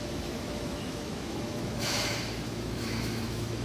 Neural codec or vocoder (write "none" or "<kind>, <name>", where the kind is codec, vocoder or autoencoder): autoencoder, DAC-VAE